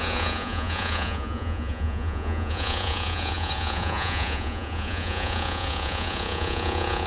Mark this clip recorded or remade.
remade